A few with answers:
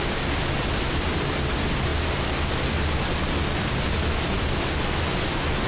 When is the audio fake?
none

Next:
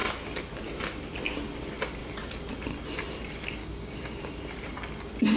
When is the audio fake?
3.6-4.3 (codec, DAC)

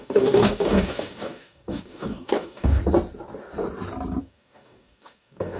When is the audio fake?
0.0-2.8 (codec, DAC); 4.2-5.6

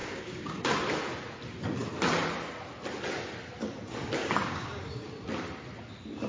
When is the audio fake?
0.0-0.6 (codec, DAC); 4.2-5.1

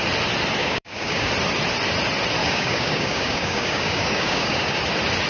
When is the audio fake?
0.6-1.3 (codec, DAC); 2.4-4.8

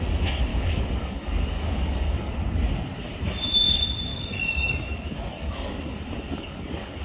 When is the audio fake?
0.5-2.3 (codec, DAC); 4.1-7.0

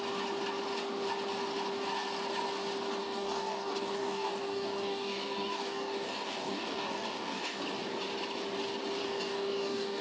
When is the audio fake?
3.0-7.6 (codec, DAC); 9.0-10.0

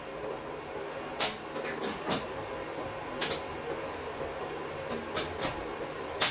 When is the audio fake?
none